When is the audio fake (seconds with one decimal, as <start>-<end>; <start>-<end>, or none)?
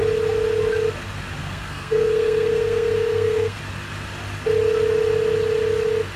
1.4-3.6